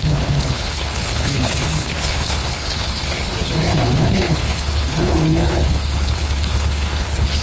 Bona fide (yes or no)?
no